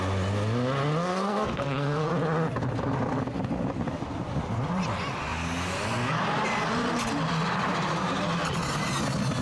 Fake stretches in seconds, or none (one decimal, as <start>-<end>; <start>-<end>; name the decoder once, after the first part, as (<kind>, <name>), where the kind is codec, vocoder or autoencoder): 1.1-2.1 (codec, SNAC)